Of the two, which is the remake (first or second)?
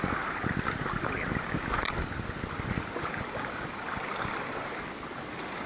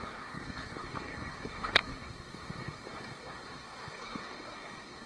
second